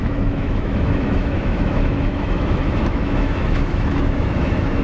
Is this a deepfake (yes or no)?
yes